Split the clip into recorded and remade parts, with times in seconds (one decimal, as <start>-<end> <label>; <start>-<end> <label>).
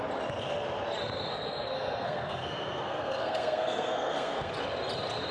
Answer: 0.0-1.3 recorded; 1.3-4.5 remade; 4.5-5.3 recorded